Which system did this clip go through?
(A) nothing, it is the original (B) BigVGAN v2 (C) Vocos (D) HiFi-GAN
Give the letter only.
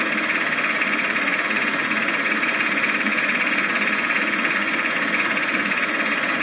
C